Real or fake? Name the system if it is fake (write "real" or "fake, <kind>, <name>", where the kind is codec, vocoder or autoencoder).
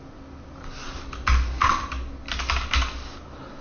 real